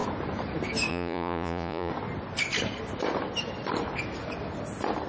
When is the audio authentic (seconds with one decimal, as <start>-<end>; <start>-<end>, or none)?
0.0-0.9; 1.9-5.1